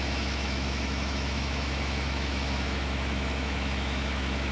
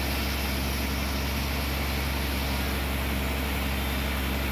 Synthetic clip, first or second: first